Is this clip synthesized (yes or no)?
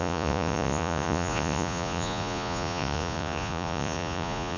yes